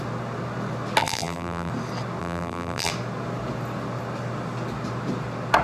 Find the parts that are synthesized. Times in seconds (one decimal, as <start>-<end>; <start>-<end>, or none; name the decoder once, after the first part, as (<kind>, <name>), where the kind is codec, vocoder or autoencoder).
1.0-1.7 (vocoder, BigVGAN v2); 2.2-2.9